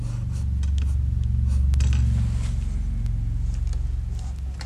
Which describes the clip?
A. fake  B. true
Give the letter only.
B